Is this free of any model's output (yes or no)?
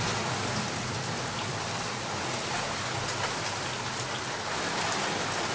yes